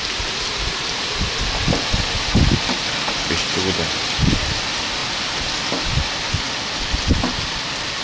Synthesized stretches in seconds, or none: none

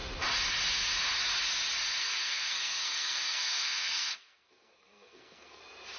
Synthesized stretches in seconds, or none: 2.0-5.6

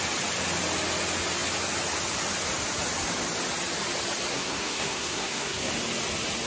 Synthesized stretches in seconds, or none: 4.3-5.7

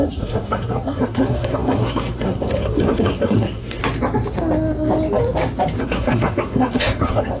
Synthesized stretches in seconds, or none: 0.0-3.8; 5.8-7.4

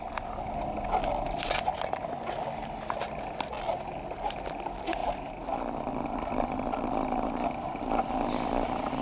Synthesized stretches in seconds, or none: none

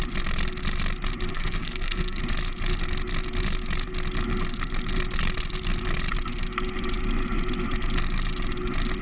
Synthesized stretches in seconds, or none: 1.3-2.2

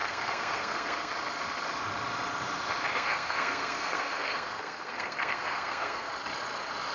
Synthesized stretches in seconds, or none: 0.0-1.1; 2.9-6.1